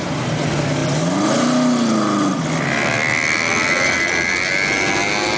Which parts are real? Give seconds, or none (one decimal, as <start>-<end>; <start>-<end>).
0.0-5.4